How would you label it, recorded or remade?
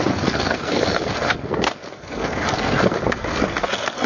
remade